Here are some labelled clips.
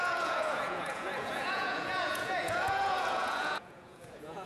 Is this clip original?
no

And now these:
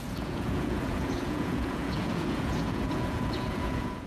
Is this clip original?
no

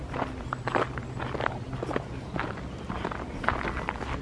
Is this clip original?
yes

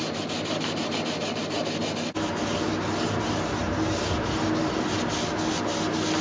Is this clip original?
yes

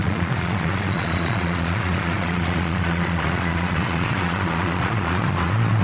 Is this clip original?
no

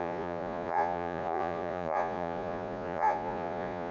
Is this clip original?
no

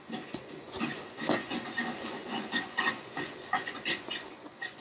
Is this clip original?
no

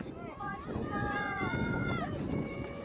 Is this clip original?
no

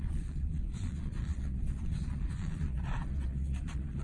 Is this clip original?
no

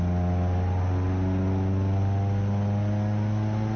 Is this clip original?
yes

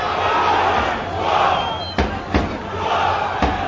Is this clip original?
yes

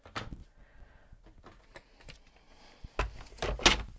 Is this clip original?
yes